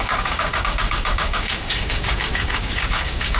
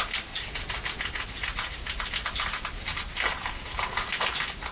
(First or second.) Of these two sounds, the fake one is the first